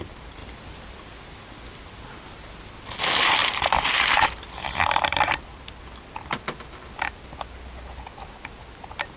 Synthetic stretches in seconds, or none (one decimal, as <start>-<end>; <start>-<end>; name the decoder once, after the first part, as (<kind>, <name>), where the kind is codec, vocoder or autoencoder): 0.4-1.0 (vocoder, BigVGAN v2); 3.4-6.3